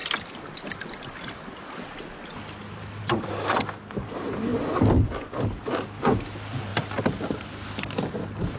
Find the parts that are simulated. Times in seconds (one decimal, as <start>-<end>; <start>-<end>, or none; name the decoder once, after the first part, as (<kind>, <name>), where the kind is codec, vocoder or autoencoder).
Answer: none